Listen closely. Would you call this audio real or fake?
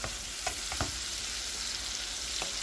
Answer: real